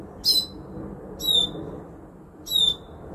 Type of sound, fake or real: real